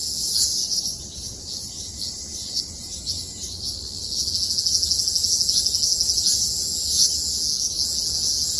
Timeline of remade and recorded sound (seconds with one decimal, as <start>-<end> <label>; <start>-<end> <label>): 0.0-0.5 recorded; 0.5-1.0 remade; 1.0-8.6 recorded